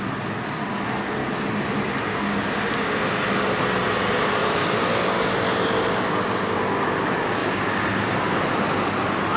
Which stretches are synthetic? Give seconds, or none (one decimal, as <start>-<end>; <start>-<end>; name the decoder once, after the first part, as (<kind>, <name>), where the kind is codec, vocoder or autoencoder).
none